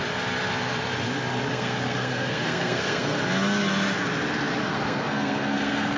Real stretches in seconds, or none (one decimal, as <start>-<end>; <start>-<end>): 0.0-1.5; 3.2-4.6